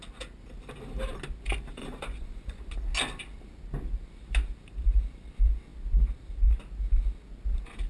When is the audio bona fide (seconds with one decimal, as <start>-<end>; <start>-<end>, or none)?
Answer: 0.0-1.8; 2.6-7.9